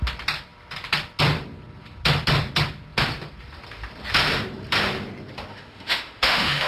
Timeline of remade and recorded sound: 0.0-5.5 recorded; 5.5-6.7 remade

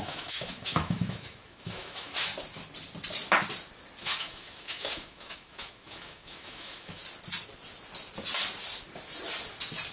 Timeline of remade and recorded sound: 0.0-2.3 remade; 2.3-4.0 recorded; 4.0-7.0 remade; 7.0-9.9 recorded

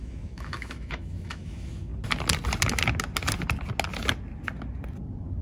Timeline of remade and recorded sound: 0.0-1.9 remade; 1.9-5.4 recorded

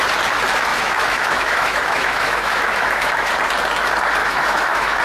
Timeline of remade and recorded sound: 0.0-0.7 recorded; 0.7-3.3 remade; 3.3-4.2 recorded; 4.2-5.0 remade

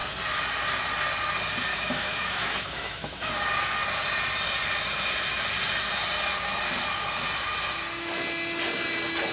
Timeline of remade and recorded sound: 0.0-1.7 recorded; 1.7-3.3 remade; 3.3-9.3 recorded

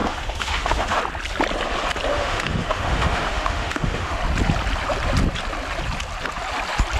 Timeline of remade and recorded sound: 0.0-1.0 remade; 1.0-2.1 recorded; 2.1-4.2 remade; 4.2-7.0 recorded

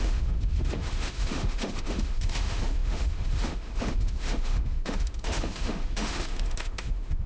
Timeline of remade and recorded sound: 0.0-7.3 remade

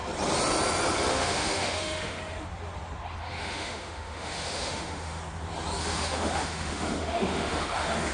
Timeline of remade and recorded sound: 0.0-1.1 recorded; 1.1-2.2 remade; 2.2-3.2 recorded; 3.2-5.2 remade; 5.2-5.8 recorded; 5.8-8.1 remade